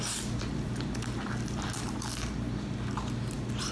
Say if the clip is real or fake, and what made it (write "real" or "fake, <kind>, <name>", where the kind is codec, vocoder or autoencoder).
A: real